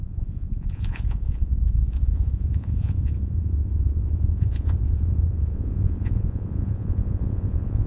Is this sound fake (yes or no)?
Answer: yes